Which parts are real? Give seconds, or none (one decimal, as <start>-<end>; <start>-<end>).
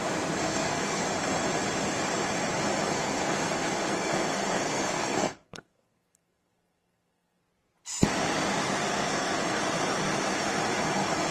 0.0-0.5; 1.0-2.8; 7.4-8.9; 9.6-11.3